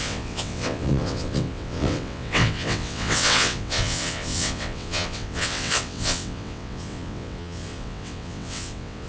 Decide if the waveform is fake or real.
fake